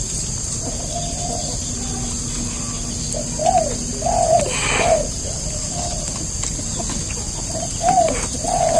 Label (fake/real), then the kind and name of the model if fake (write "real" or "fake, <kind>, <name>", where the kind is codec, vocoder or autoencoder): real